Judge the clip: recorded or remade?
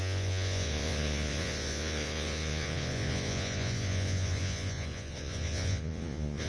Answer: remade